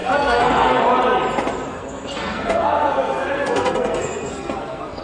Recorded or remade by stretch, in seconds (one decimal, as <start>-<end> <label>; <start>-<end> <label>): 0.0-0.8 remade; 0.8-1.7 recorded; 1.7-5.0 remade